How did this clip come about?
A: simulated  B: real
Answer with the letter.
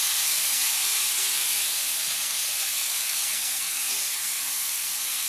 A